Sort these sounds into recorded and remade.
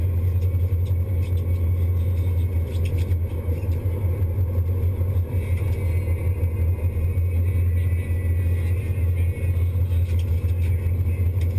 recorded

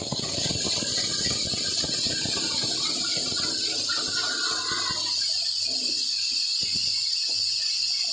recorded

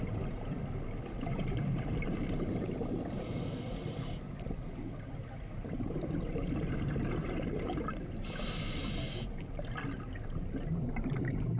recorded